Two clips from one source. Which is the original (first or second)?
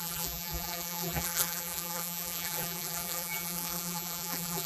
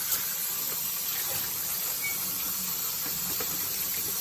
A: second